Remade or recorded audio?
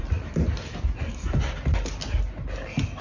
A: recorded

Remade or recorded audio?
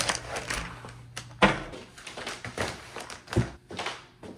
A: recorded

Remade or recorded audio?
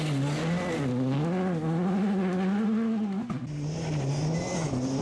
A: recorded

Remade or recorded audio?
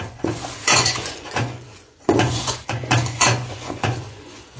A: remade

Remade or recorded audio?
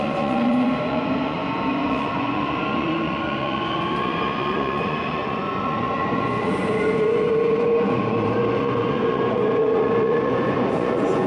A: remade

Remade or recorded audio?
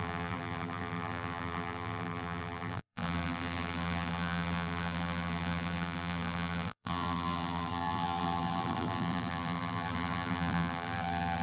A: remade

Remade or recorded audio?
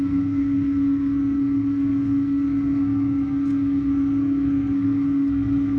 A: remade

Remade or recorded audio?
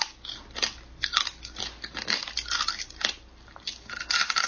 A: recorded